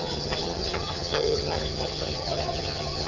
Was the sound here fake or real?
fake